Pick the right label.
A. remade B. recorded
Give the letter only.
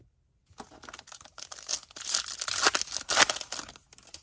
B